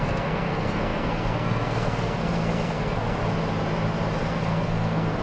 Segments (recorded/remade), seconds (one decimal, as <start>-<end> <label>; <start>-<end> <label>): 0.0-3.2 remade; 3.2-4.2 recorded; 4.2-5.2 remade